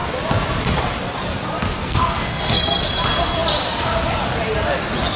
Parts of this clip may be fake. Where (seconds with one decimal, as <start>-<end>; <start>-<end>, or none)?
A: 1.8-2.9